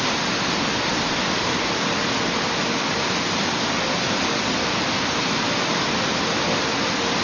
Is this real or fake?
real